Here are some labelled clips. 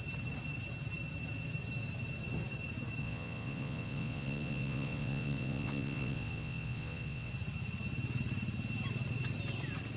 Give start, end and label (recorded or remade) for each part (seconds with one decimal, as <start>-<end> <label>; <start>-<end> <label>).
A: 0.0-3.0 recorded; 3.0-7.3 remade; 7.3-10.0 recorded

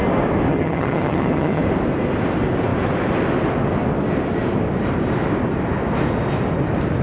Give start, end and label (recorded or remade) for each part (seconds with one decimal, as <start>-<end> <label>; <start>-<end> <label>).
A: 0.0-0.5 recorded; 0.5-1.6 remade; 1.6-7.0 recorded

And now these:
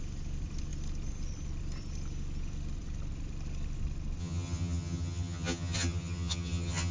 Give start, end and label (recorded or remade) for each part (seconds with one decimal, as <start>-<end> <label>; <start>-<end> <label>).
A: 0.0-4.2 recorded; 4.2-6.9 remade

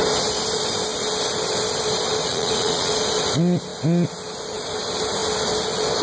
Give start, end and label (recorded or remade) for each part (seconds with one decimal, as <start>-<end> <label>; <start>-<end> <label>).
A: 0.0-2.3 recorded; 2.3-2.9 remade; 2.9-6.0 recorded

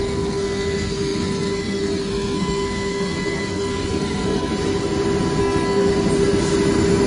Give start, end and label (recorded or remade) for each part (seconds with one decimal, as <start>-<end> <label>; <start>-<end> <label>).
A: 0.0-4.5 remade; 4.5-5.4 recorded; 5.4-5.9 remade; 5.9-7.1 recorded

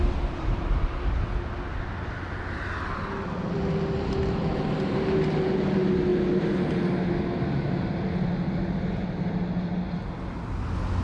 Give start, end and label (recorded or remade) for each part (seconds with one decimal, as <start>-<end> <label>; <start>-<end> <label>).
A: 0.0-11.0 recorded